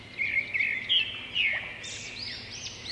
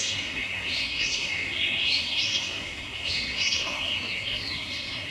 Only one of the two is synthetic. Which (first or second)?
second